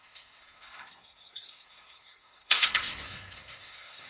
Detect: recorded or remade remade